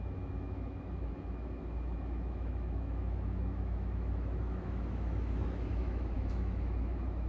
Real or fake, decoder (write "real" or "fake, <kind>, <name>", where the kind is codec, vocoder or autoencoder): fake, autoencoder, DAC-VAE